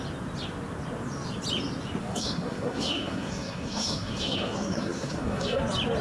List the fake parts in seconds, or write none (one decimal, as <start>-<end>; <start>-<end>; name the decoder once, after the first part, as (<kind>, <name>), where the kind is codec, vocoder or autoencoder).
2.0-5.6 (codec, SNAC)